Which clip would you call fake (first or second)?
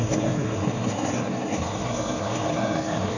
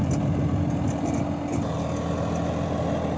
first